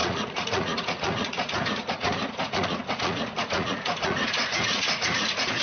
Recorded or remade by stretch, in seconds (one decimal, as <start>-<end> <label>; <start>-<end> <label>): 0.0-5.6 remade